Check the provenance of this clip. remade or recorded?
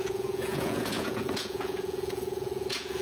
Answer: remade